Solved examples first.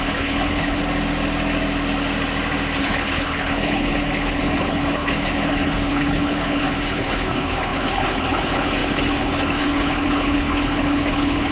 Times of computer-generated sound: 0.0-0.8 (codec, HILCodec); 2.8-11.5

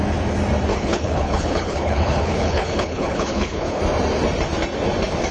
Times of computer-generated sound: 0.7-3.8 (codec, HILCodec)

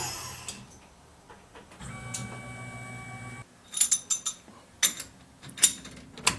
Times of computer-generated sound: none